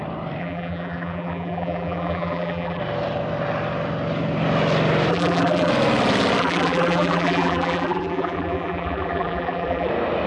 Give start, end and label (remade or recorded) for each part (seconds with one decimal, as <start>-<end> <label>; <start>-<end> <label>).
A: 0.0-0.4 recorded; 0.4-2.8 remade; 2.8-5.1 recorded; 5.1-5.7 remade; 5.7-6.4 recorded; 6.4-9.9 remade; 9.9-10.3 recorded